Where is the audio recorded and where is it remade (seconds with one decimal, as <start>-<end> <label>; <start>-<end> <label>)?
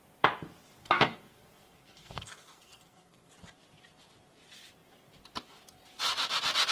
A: 0.0-0.8 recorded; 0.8-3.3 remade; 3.3-6.7 recorded